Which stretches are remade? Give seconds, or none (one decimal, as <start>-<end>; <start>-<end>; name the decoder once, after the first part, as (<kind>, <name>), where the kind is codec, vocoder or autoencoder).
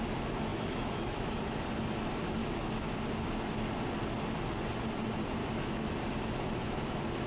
0.5-1.4 (autoencoder, DAC-VAE); 2.4-3.0; 5.4-5.9